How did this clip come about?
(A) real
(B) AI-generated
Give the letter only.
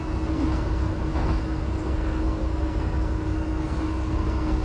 B